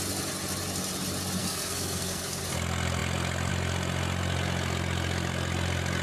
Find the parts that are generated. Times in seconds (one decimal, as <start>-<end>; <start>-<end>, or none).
1.4-2.4